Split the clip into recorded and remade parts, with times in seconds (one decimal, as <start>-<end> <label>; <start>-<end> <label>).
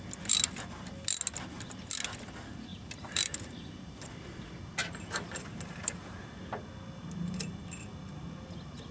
0.0-2.7 recorded; 2.7-4.1 remade; 4.1-4.8 recorded; 4.8-6.2 remade; 6.2-8.9 recorded